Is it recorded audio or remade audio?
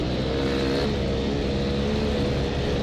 recorded